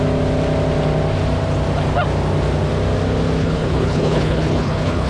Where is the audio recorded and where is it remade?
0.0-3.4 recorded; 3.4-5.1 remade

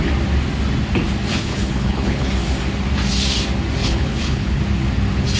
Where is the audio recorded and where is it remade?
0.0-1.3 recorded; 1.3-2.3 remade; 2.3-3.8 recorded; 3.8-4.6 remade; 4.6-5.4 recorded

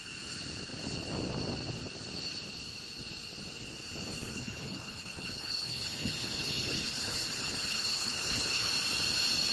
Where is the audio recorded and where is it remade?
0.0-4.2 recorded; 4.2-8.7 remade; 8.7-9.5 recorded

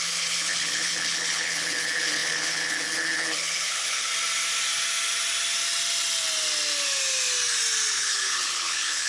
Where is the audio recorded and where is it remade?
0.0-4.1 remade; 4.1-7.9 recorded; 7.9-9.1 remade